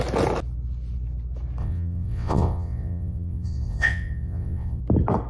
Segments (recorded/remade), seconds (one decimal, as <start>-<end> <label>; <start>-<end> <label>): 0.0-1.6 recorded; 1.6-4.8 remade; 4.8-5.3 recorded